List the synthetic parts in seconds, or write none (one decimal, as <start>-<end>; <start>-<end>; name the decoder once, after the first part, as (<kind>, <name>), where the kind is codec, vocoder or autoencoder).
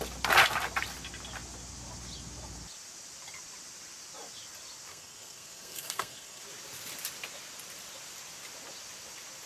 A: 4.9-6.4 (codec, SNAC)